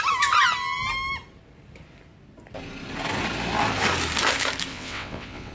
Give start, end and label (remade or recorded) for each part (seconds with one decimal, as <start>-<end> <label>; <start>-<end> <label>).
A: 0.0-4.7 recorded; 4.7-5.5 remade

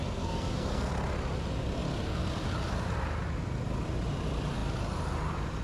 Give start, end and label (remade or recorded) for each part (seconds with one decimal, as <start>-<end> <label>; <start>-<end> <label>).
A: 0.0-0.9 remade; 0.9-5.6 recorded

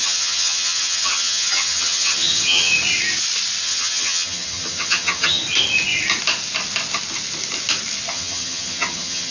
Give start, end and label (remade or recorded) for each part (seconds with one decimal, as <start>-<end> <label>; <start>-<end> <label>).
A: 0.0-2.7 remade; 2.7-3.6 recorded; 3.6-5.4 remade; 5.4-8.1 recorded; 8.1-9.3 remade

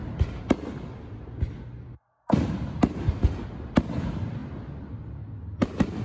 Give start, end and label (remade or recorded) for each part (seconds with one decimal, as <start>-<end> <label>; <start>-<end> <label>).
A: 0.0-6.0 recorded